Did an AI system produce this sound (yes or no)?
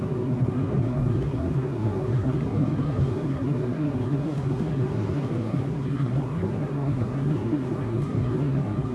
yes